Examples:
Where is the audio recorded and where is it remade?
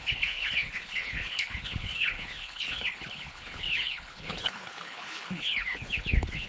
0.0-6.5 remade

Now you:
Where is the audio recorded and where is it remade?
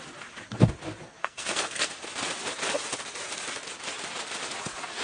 0.0-1.2 recorded; 1.2-1.9 remade; 1.9-5.0 recorded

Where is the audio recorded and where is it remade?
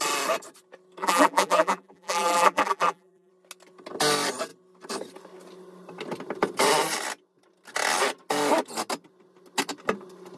0.0-1.0 recorded; 1.0-3.3 remade; 3.3-10.4 recorded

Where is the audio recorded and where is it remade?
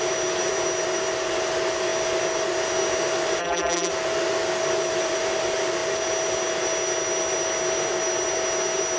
0.0-3.4 recorded; 3.4-3.9 remade; 3.9-9.0 recorded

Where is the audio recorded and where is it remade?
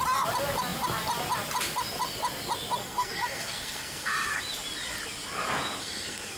0.0-2.8 recorded; 2.8-4.4 remade; 4.4-5.8 recorded; 5.8-6.4 remade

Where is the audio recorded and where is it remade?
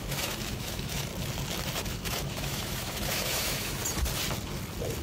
0.0-1.1 remade; 1.1-1.8 recorded; 1.8-3.8 remade; 3.8-5.0 recorded